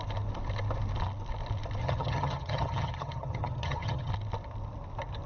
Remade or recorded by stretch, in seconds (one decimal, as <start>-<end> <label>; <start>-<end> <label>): 0.0-1.8 recorded; 1.8-4.1 remade; 4.1-5.3 recorded